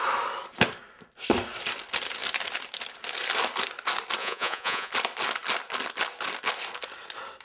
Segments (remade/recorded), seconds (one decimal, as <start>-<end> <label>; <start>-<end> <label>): 0.0-4.2 recorded; 4.2-4.9 remade; 4.9-7.4 recorded